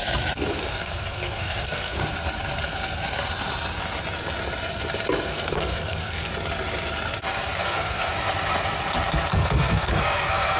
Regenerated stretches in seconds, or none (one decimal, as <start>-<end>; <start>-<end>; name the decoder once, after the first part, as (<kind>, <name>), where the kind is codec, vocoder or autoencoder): 0.6-2.0 (codec, SNAC); 5.3-6.3; 7.6-8.1; 9.3-10.6